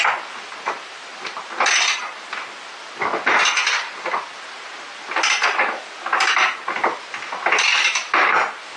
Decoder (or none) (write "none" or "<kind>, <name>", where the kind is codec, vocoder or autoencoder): none